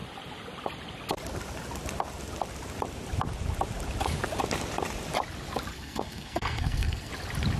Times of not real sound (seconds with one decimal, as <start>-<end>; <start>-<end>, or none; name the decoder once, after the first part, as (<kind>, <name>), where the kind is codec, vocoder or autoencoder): 5.7-7.1 (codec, SNAC)